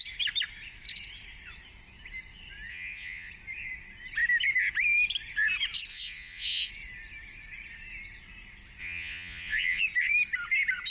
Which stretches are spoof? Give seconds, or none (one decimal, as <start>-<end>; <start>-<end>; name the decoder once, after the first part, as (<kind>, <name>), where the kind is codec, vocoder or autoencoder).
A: 2.7-3.3 (vocoder, Vocos); 5.9-6.7; 8.8-9.8